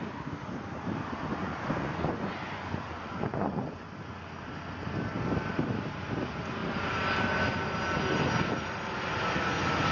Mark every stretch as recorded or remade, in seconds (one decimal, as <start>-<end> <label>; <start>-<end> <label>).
0.0-1.4 recorded; 1.4-3.8 remade; 3.8-9.9 recorded